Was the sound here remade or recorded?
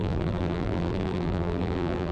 remade